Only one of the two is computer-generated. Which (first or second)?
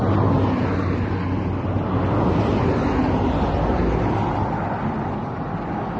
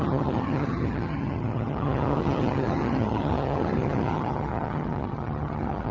second